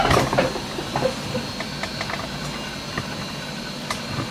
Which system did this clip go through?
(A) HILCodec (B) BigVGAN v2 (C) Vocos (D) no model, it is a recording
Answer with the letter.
D